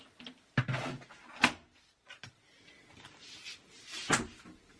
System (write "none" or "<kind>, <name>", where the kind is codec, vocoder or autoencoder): none